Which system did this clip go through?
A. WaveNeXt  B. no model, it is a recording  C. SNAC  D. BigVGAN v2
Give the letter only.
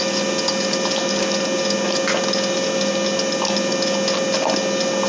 B